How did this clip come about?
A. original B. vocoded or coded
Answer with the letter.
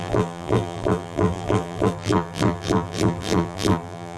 B